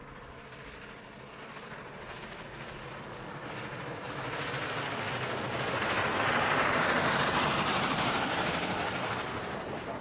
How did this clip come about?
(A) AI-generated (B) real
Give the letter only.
B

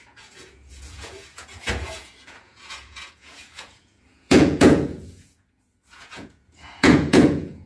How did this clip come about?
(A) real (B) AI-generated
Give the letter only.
B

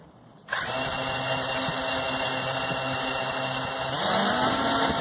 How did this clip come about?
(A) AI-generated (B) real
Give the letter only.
B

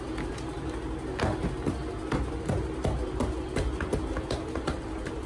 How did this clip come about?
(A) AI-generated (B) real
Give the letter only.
B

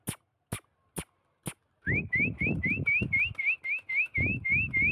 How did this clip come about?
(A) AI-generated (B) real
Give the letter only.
B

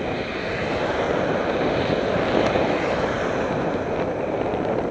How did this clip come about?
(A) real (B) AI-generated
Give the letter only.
A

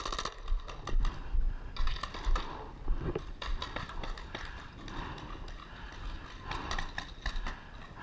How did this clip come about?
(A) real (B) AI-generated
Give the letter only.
A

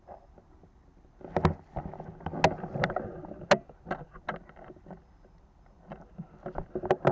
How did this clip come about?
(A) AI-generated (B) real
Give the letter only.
B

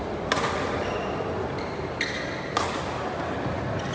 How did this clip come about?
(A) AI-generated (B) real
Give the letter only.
B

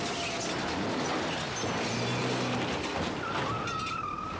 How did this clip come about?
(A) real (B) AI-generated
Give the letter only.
A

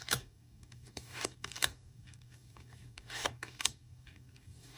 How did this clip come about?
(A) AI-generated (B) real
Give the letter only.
A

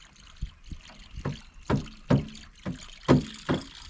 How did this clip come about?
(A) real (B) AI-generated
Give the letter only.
A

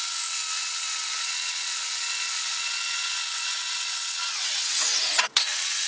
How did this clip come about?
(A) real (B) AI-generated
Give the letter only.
B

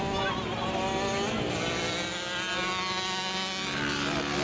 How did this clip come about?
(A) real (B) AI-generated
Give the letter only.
A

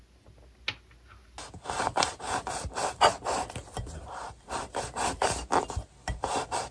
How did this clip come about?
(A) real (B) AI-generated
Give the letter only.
A